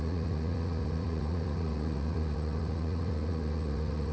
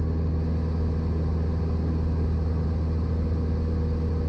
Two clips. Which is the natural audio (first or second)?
second